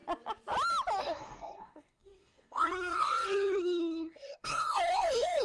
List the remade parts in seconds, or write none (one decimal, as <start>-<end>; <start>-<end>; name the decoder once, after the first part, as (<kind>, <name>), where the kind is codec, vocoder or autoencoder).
1.0-5.4 (codec, SNAC)